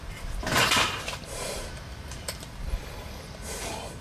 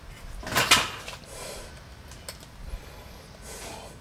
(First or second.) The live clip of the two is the second